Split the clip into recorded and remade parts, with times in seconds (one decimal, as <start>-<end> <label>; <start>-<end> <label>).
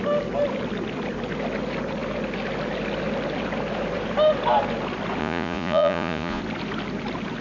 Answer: 0.0-5.2 recorded; 5.2-6.4 remade; 6.4-7.4 recorded